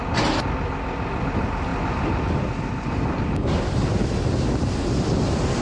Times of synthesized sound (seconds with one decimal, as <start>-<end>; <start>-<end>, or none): none